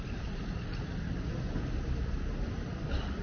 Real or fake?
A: real